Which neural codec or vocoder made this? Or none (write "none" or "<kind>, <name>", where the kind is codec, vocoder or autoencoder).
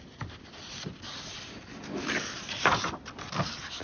vocoder, BigVGAN v2